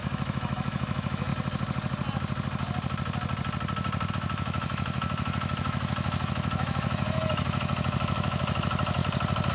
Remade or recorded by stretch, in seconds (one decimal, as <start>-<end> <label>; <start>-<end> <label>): 0.0-1.3 remade; 1.3-4.1 recorded; 4.1-9.0 remade; 9.0-9.5 recorded